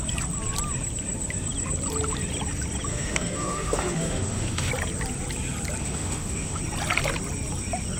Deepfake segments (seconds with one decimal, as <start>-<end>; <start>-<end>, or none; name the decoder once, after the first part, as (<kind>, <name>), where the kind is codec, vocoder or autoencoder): 2.9-4.7 (autoencoder, DAC-VAE); 5.8-6.6